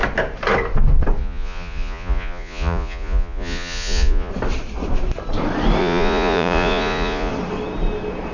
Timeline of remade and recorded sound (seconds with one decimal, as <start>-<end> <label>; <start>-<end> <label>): 0.0-1.2 recorded; 1.2-4.3 remade; 4.3-5.8 recorded; 5.8-7.3 remade; 7.3-8.3 recorded

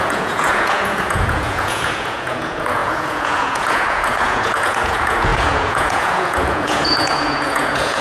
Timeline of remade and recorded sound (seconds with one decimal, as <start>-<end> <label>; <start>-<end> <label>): 0.0-8.0 remade

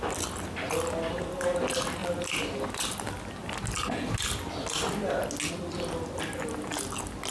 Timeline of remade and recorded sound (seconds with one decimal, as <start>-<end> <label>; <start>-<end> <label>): 0.0-7.3 recorded